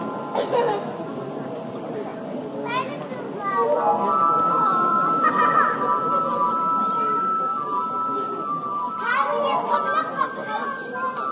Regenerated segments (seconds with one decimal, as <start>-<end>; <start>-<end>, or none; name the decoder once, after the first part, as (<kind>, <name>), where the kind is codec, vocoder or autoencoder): 0.0-2.1 (vocoder, BigVGAN v2); 3.0-9.3; 10.8-11.3